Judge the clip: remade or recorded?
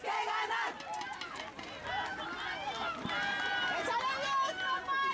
recorded